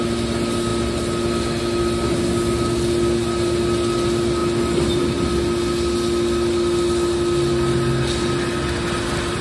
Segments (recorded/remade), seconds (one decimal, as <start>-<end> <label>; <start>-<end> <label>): 0.0-9.4 recorded

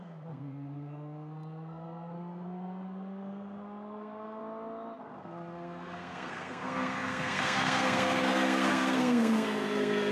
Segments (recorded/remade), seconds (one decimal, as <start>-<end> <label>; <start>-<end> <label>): 0.0-4.4 remade; 4.4-5.0 recorded; 5.0-10.1 remade

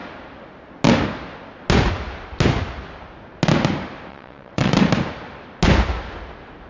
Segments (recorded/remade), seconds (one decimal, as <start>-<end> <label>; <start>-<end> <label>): 0.0-4.1 recorded; 4.1-4.7 remade; 4.7-6.7 recorded

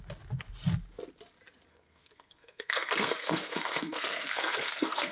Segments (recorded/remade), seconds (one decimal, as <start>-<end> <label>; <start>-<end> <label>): 0.0-1.7 recorded; 1.7-5.1 remade

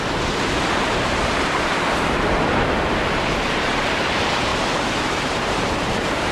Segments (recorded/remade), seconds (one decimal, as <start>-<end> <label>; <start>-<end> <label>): 0.0-4.5 remade; 4.5-5.0 recorded; 5.0-6.3 remade

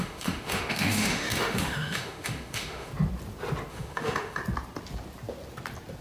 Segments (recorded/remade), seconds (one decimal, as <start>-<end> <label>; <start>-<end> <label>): 0.0-2.9 remade; 2.9-3.7 recorded; 3.7-4.4 remade; 4.4-6.0 recorded